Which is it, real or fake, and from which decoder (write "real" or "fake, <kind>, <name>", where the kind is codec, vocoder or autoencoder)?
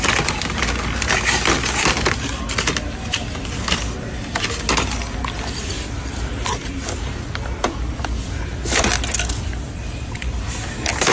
real